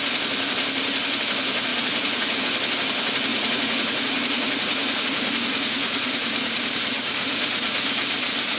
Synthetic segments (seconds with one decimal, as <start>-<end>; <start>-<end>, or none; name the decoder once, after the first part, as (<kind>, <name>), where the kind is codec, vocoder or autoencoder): 1.7-2.4 (vocoder, Vocos); 3.3-6.6; 7.2-7.8